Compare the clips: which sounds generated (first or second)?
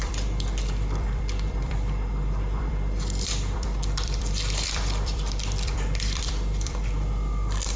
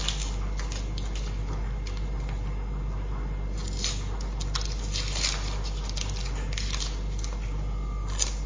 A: first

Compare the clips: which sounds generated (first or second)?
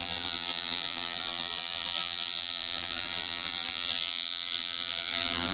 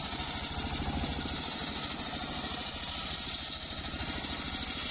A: first